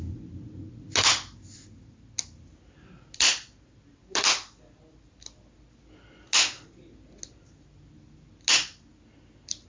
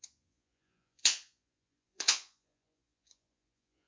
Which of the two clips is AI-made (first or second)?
second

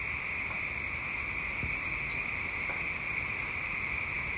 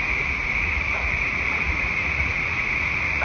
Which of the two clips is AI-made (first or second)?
second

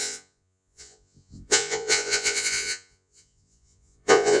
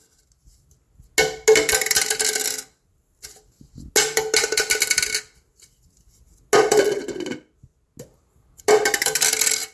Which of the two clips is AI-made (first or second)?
first